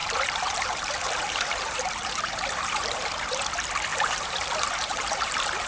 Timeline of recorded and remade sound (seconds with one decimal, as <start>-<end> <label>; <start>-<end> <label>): 0.0-3.4 remade; 3.4-3.9 recorded; 3.9-5.7 remade